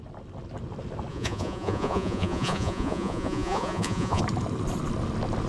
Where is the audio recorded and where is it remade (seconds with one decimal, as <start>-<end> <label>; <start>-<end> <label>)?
0.0-1.1 recorded; 1.1-4.2 remade; 4.2-5.5 recorded